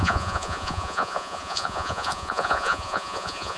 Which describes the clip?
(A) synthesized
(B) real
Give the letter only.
A